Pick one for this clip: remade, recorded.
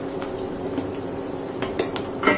remade